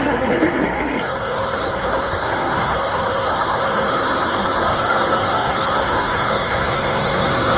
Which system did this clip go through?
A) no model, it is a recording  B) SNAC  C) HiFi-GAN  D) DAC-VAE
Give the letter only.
B